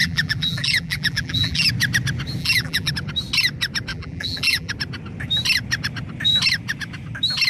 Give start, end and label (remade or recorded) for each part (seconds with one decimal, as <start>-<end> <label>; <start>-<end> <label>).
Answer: 0.0-1.7 remade; 1.7-2.4 recorded; 2.4-2.9 remade; 2.9-3.9 recorded; 3.9-4.7 remade; 4.7-7.5 recorded